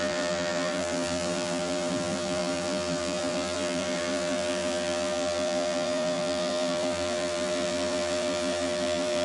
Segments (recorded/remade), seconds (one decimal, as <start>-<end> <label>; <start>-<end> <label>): 0.0-9.2 remade